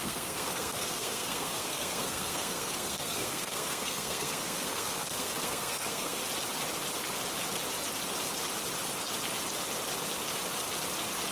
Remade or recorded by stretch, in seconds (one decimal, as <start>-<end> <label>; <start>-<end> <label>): 0.0-6.2 remade; 6.2-11.3 recorded